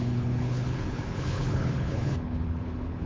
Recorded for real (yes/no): no